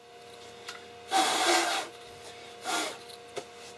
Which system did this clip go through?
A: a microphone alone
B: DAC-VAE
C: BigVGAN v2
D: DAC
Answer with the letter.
A